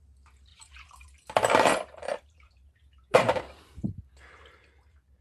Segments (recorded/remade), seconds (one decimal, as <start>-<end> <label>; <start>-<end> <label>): 0.0-0.5 recorded; 0.5-3.4 remade; 3.4-5.2 recorded